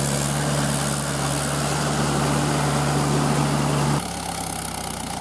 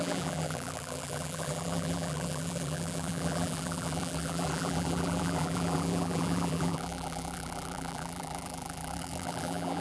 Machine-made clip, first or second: second